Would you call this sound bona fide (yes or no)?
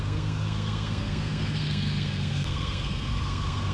no